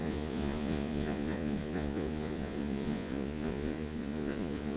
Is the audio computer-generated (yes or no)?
yes